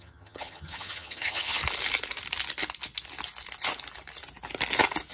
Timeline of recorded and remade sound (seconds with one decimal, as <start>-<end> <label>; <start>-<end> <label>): 0.0-1.6 remade; 1.6-5.1 recorded